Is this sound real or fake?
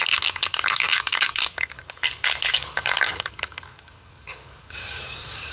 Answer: fake